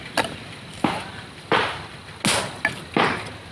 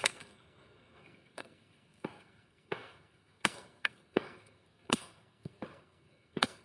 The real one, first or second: first